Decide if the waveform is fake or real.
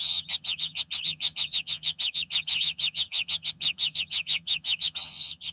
fake